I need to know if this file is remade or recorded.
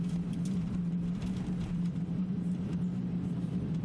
remade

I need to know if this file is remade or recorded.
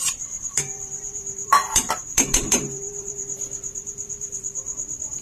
remade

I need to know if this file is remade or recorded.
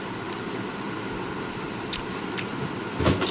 recorded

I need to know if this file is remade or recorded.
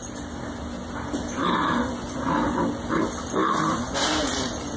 recorded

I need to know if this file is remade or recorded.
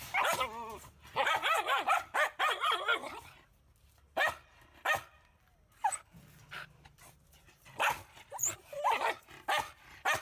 recorded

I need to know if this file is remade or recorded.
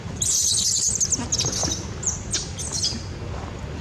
recorded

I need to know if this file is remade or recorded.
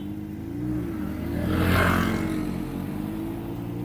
recorded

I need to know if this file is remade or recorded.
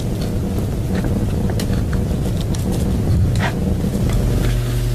recorded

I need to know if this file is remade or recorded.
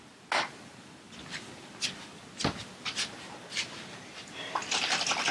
recorded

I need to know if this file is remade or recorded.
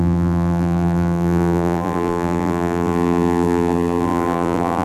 remade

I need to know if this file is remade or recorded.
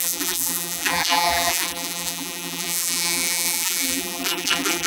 remade